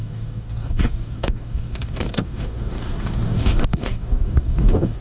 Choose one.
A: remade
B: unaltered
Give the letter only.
A